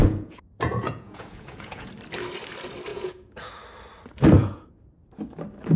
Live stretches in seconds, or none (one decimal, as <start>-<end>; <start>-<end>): 1.9-2.9; 3.5-4.4; 4.9-5.8